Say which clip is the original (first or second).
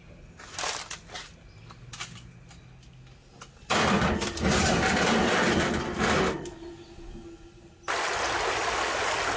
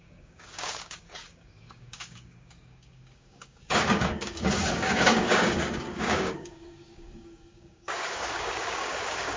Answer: first